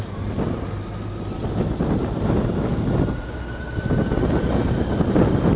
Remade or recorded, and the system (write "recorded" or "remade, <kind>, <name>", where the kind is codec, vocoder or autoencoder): recorded